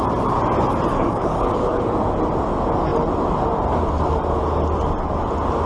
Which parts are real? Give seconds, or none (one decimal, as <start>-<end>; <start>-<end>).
0.0-0.9; 1.9-5.7